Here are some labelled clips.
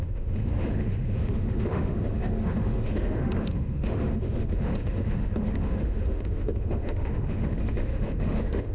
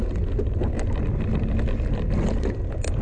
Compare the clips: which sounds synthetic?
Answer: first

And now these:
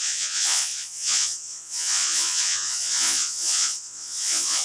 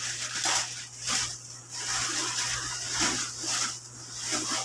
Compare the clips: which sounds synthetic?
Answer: first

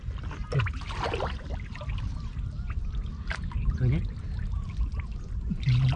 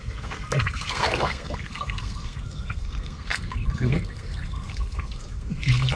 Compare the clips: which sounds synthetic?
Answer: second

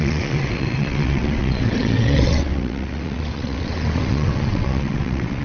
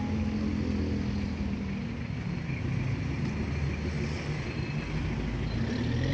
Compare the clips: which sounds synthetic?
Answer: first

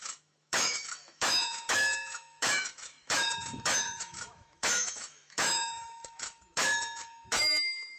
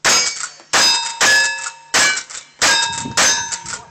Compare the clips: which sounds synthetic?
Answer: first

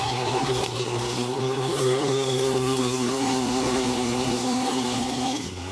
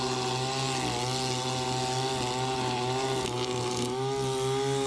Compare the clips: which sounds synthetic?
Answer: first